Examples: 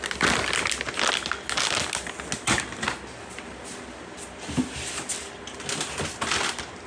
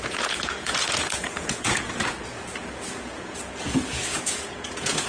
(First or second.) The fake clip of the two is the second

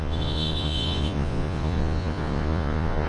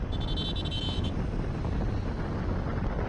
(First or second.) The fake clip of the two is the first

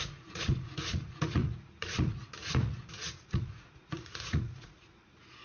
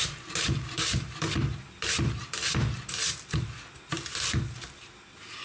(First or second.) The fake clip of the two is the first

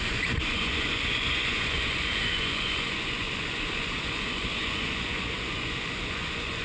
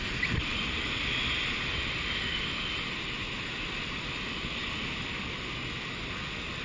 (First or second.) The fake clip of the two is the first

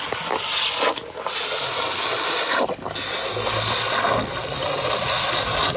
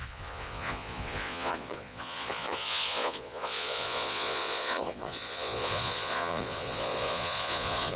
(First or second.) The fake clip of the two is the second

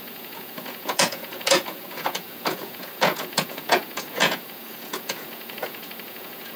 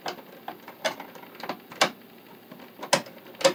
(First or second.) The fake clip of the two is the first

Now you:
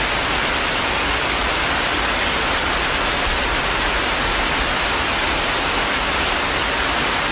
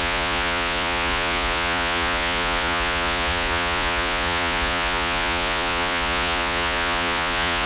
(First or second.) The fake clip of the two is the second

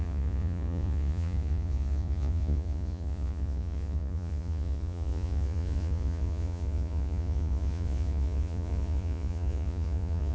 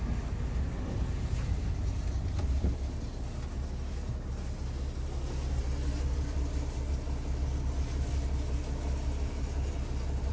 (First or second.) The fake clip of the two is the first